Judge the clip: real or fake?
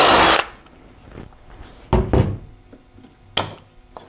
real